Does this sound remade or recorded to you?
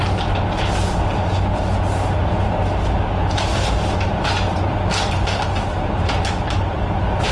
recorded